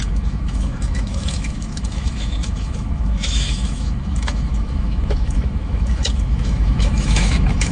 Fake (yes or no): yes